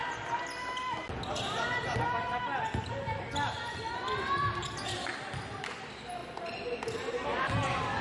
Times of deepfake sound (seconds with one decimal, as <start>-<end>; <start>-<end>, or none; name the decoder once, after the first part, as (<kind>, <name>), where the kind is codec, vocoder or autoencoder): 6.2-8.0 (vocoder, BigVGAN v2)